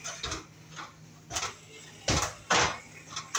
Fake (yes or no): no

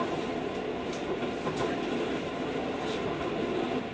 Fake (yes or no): no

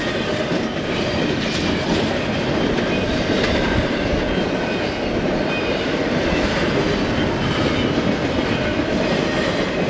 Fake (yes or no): no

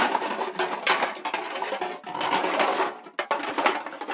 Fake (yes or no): no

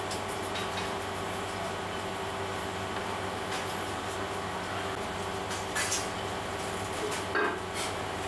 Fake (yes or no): no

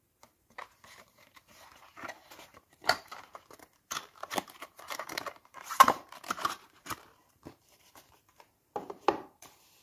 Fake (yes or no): yes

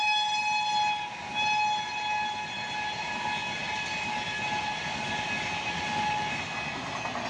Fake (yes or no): no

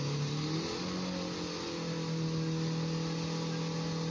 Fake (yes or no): no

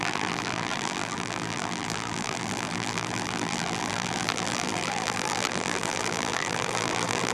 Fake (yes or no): yes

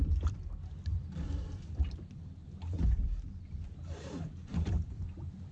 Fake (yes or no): yes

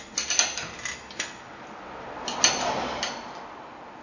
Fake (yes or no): no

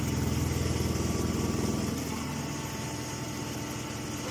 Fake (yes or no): no